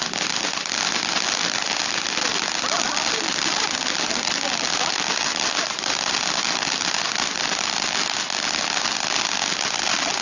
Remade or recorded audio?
recorded